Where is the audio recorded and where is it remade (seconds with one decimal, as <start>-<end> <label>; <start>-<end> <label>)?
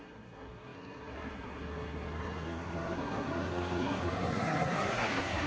0.0-5.5 remade